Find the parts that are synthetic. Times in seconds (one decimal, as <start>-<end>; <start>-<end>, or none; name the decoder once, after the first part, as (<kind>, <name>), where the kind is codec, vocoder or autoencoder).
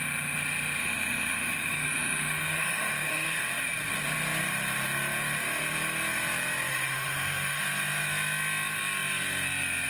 0.8-3.4 (autoencoder, DAC-VAE); 6.7-7.6